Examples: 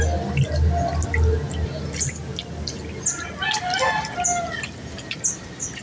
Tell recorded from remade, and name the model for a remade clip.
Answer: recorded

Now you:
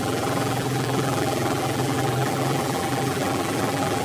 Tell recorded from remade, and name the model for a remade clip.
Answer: remade, vocoder, BigVGAN v2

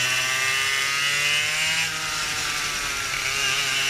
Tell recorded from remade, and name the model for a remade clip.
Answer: recorded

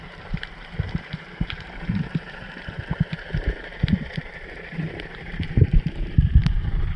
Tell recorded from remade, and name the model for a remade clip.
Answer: remade, vocoder, BigVGAN v2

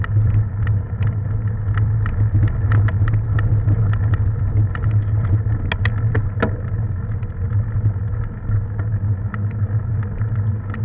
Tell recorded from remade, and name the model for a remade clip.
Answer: recorded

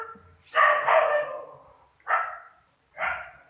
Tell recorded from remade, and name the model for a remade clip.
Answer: recorded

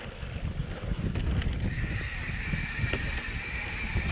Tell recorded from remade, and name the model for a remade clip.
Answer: recorded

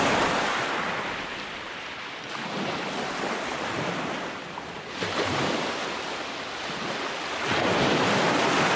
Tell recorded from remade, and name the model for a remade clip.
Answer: recorded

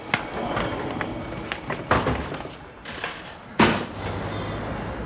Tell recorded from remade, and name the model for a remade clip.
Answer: recorded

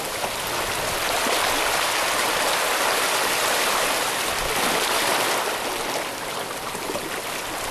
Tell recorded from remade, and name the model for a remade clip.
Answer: recorded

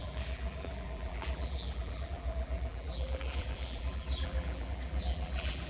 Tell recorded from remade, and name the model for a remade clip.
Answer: remade, vocoder, BigVGAN v2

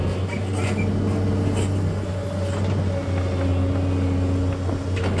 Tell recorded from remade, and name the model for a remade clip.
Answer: recorded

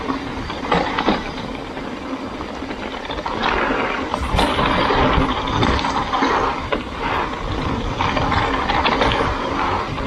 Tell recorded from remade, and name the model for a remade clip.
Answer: recorded